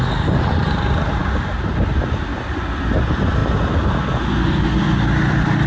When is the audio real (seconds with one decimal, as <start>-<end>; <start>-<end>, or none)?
0.0-5.7